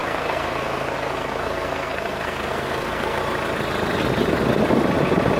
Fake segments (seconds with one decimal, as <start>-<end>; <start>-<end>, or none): 0.0-3.2